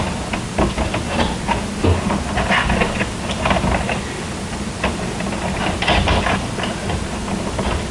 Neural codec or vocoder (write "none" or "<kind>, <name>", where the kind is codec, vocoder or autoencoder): none